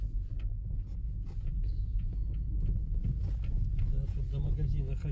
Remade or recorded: recorded